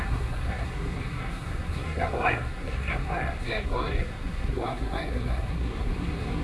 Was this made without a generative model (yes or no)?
no